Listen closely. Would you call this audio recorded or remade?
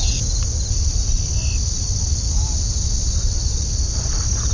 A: recorded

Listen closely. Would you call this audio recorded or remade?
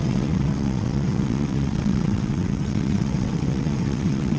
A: remade